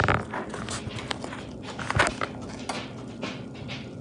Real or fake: real